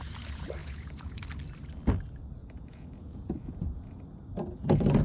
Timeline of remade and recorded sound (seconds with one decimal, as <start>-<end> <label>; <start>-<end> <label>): 0.0-0.6 recorded; 0.6-1.2 remade; 1.2-2.4 recorded; 2.4-4.0 remade; 4.0-5.0 recorded